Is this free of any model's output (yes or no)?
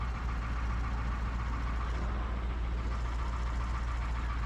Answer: yes